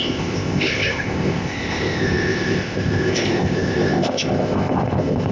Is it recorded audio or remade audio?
remade